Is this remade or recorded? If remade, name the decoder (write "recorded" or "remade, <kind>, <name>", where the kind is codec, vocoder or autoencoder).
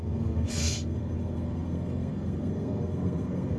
remade, codec, SNAC